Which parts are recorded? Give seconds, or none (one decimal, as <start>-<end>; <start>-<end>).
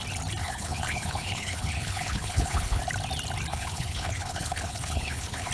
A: 0.0-0.4; 2.8-3.5